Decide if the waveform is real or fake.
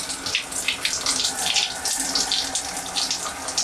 real